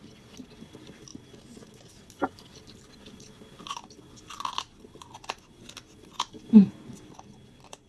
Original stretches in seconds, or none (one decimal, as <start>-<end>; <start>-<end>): 0.0-7.9